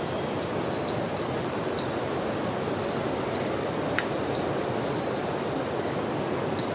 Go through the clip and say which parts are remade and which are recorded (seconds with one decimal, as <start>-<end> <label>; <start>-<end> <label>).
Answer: 0.0-1.1 recorded; 1.1-2.6 remade; 2.6-6.7 recorded